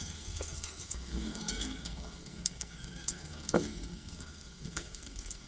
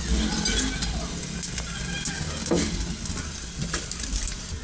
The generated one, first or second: first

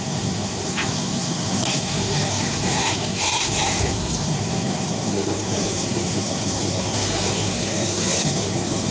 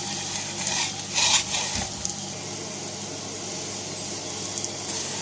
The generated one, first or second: first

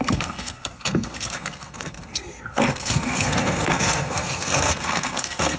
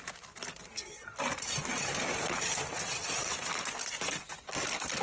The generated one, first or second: first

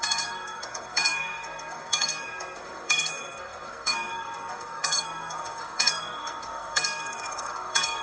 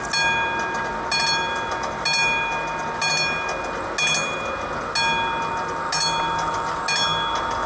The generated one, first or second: first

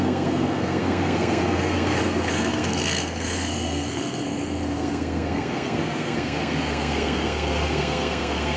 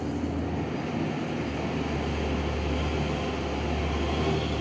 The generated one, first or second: first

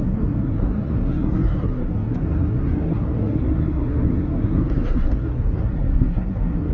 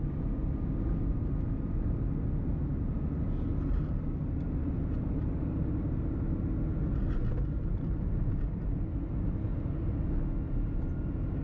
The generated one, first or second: first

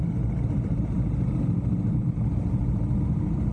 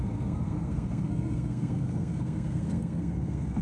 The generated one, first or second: second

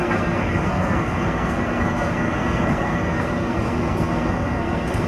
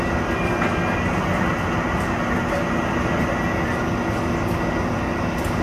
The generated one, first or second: first